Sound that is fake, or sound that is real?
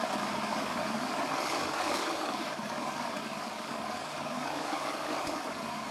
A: fake